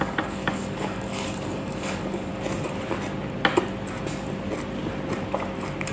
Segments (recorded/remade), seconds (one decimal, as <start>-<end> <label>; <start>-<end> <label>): 0.0-2.3 remade; 2.3-5.9 recorded